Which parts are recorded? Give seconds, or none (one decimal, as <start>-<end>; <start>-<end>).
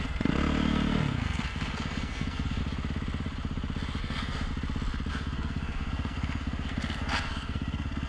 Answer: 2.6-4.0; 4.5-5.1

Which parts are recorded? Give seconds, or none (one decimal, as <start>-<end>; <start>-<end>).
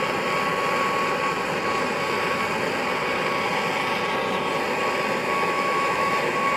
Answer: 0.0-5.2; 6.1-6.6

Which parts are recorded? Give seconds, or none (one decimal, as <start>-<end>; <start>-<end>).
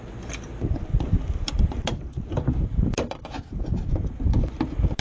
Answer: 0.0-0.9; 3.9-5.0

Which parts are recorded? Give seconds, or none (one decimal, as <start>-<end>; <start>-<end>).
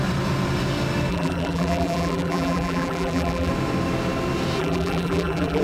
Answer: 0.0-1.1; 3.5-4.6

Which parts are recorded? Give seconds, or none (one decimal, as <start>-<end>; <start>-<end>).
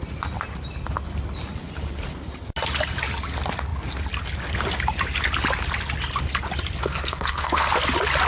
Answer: 0.0-6.8; 7.7-8.3